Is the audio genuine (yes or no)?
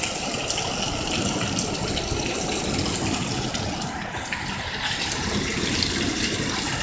yes